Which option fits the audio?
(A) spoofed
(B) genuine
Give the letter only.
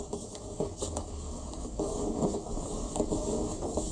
A